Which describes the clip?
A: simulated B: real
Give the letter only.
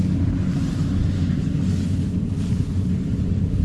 B